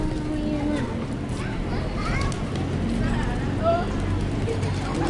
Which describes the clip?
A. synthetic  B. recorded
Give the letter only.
B